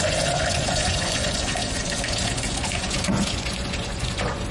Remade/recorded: remade